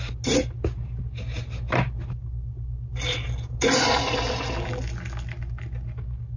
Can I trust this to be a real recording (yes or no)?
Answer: yes